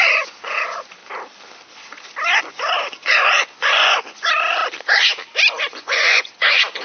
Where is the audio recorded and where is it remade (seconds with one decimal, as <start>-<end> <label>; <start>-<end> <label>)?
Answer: 0.0-1.0 remade; 1.0-2.4 recorded; 2.4-4.6 remade; 4.6-5.5 recorded; 5.5-6.8 remade